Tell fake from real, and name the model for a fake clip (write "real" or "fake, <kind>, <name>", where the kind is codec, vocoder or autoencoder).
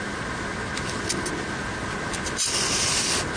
real